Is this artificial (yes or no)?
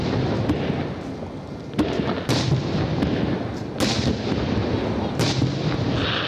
no